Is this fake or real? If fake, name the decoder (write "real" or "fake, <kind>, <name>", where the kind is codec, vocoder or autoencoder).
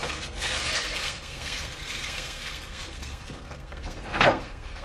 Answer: fake, codec, SNAC